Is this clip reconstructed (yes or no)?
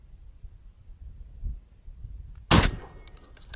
no